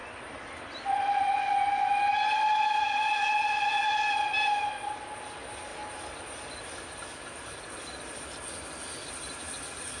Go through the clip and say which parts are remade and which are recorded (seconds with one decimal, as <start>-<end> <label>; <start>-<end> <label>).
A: 0.0-4.1 remade; 4.1-10.0 recorded